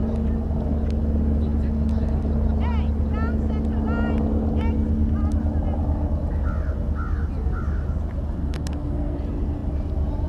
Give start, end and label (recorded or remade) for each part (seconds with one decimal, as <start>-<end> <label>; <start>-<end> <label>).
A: 0.0-8.4 recorded; 8.4-9.2 remade; 9.2-10.3 recorded